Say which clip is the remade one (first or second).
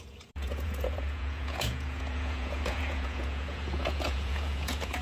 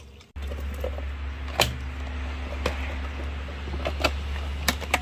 first